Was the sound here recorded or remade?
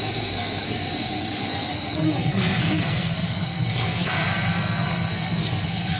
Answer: remade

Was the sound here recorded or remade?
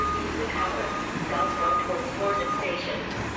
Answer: recorded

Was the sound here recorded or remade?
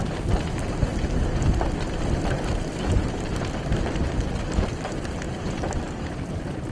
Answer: recorded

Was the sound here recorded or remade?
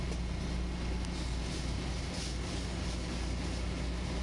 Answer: recorded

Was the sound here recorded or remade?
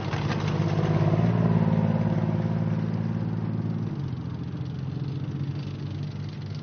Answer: recorded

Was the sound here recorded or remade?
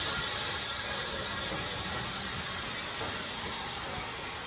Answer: recorded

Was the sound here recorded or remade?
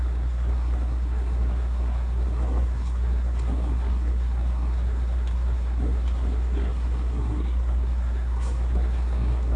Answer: remade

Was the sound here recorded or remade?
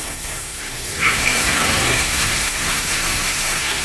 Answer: remade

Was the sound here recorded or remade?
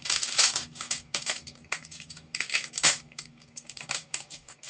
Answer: remade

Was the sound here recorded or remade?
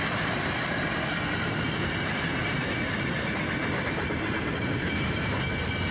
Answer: recorded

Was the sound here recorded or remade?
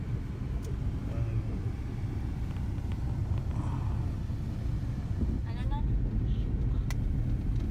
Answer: recorded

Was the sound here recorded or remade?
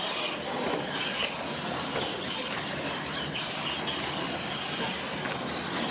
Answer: recorded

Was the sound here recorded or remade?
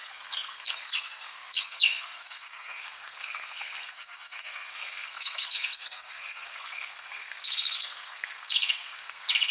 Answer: remade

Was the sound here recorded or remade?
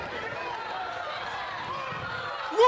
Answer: recorded